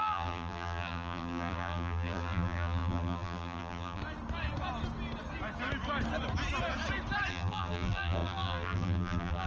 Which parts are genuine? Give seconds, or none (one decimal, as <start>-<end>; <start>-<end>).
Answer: 4.0-7.3